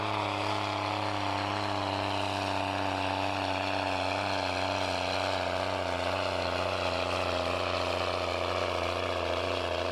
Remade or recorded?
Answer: recorded